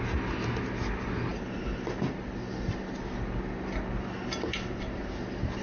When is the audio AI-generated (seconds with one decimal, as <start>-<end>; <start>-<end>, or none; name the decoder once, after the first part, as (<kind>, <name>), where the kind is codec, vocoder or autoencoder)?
none